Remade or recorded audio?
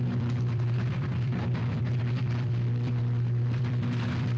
remade